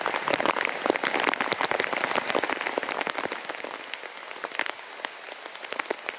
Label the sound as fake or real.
real